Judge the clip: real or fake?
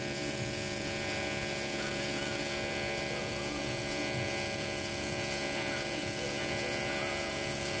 fake